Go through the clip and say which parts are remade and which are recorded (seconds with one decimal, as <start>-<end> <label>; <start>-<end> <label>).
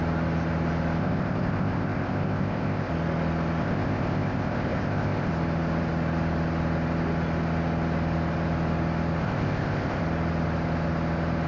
0.0-1.0 recorded; 1.0-2.9 remade; 2.9-3.6 recorded; 3.6-5.3 remade; 5.3-9.2 recorded; 9.2-10.0 remade; 10.0-11.5 recorded